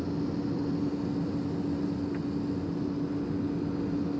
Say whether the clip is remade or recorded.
recorded